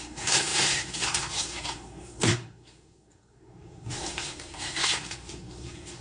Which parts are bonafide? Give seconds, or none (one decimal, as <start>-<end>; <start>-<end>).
none